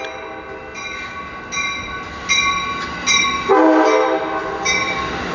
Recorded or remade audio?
recorded